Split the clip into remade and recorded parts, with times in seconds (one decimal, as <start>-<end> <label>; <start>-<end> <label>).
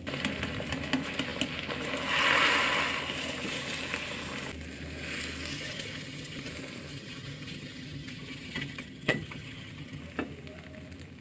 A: 0.0-5.5 recorded; 5.5-6.5 remade; 6.5-6.9 recorded; 6.9-10.0 remade; 10.0-11.2 recorded